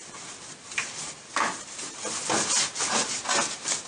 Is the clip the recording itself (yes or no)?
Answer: yes